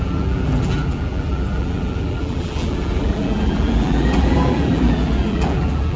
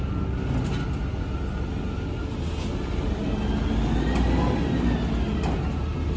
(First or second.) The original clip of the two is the second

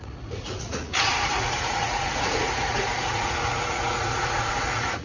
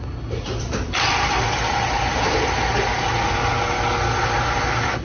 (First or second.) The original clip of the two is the second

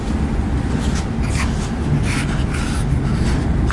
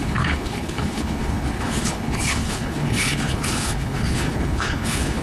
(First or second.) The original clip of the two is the first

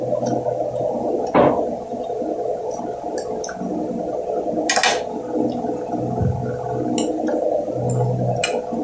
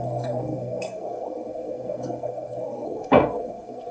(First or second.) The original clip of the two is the first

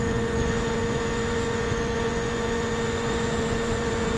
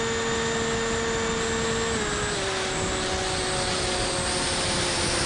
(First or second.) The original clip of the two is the second